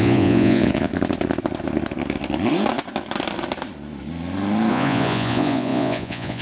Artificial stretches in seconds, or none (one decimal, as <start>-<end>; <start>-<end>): 0.0-0.9; 4.7-6.4